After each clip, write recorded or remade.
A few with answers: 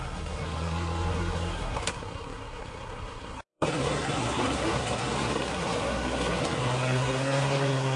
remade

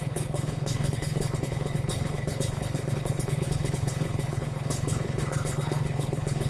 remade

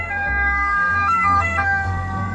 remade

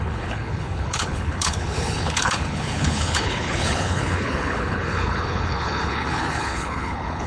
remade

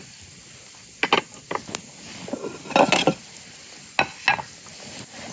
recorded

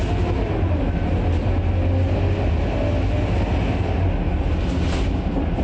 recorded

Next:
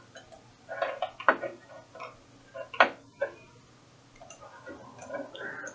recorded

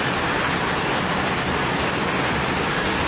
recorded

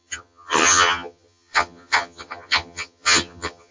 remade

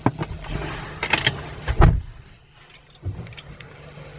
recorded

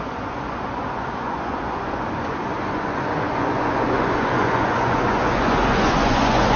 remade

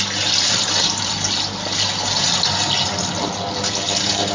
recorded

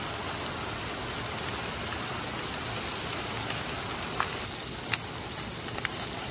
recorded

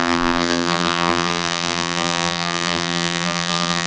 remade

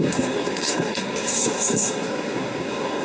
remade